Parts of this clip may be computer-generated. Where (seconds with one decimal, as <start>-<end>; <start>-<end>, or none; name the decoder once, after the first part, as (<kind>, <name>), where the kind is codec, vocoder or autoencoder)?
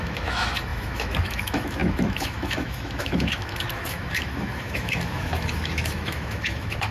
0.0-6.9 (autoencoder, DAC-VAE)